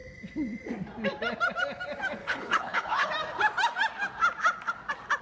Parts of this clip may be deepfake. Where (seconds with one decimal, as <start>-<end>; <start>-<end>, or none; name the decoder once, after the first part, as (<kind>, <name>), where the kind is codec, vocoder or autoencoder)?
2.2-3.1 (codec, HILCodec)